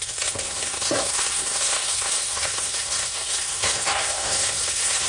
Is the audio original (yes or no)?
no